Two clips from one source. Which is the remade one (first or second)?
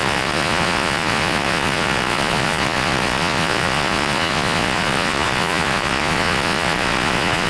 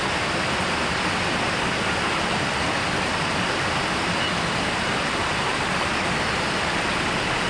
first